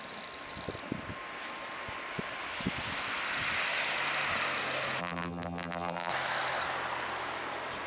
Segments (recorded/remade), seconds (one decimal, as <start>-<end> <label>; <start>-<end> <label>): 0.0-5.0 recorded; 5.0-6.1 remade; 6.1-7.9 recorded